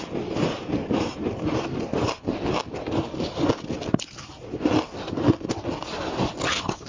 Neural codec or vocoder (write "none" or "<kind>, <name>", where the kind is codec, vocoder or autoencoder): none